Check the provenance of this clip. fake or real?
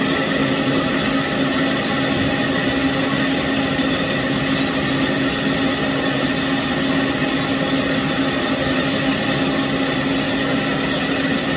real